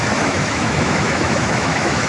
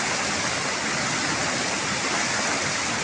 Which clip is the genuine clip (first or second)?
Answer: second